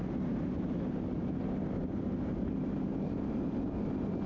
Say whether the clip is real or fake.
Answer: real